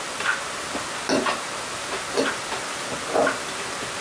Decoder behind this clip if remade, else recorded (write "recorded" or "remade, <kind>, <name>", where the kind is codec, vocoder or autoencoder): recorded